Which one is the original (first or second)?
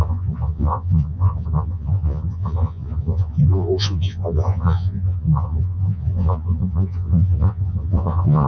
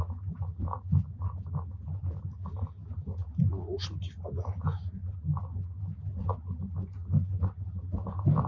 second